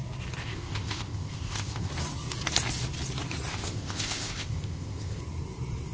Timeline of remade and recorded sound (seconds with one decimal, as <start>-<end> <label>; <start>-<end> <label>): 0.0-0.4 recorded; 0.4-1.9 remade; 1.9-3.5 recorded; 3.5-5.2 remade; 5.2-5.9 recorded